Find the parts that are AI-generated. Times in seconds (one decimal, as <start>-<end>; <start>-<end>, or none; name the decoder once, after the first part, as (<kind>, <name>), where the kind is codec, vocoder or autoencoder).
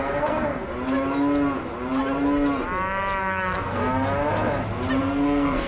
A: 0.0-0.6 (codec, SNAC); 3.2-3.8; 5.0-5.7